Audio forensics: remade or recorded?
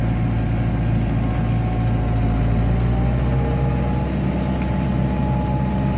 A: recorded